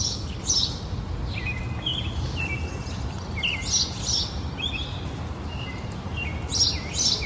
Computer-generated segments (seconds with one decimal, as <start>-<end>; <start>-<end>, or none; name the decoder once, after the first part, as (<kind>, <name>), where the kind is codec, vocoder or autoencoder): none

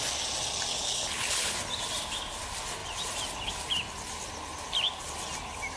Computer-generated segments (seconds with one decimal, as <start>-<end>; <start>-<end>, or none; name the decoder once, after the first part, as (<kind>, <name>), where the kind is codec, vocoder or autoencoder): 0.7-1.5 (codec, HILCodec)

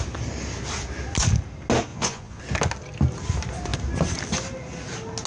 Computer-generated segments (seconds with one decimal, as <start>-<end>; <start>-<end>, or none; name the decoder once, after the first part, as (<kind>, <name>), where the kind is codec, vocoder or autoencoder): 1.9-2.4 (vocoder, Vocos)

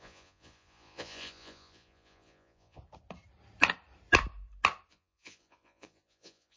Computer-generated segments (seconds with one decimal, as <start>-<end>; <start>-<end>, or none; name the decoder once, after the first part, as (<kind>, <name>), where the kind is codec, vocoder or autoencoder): 0.0-2.8 (vocoder, Vocos); 4.9-6.6

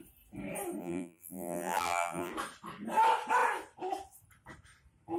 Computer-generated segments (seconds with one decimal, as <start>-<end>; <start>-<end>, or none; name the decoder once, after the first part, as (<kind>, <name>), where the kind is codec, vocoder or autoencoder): 0.8-2.3 (vocoder, BigVGAN v2)

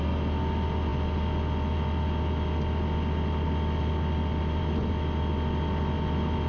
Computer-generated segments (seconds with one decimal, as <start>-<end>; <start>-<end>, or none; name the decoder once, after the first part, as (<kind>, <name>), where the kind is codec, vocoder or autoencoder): none